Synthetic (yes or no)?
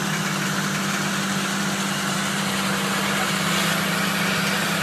no